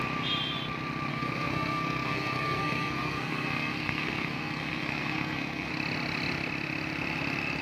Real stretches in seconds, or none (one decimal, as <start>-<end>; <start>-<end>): 0.0-1.1; 5.7-7.6